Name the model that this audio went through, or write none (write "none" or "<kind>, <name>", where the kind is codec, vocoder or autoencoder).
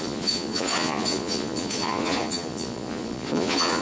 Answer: vocoder, Vocos